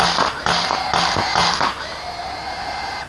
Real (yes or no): yes